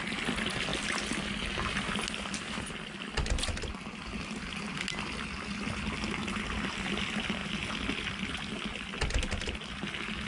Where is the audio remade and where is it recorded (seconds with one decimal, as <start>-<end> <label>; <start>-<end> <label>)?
0.0-0.7 recorded; 0.7-1.9 remade; 1.9-4.0 recorded; 4.0-4.6 remade; 4.6-10.3 recorded